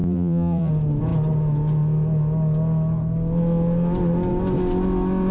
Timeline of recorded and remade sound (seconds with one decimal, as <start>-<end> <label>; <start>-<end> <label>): 0.0-0.7 remade; 0.7-5.3 recorded